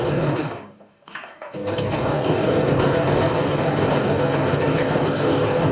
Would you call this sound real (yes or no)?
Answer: no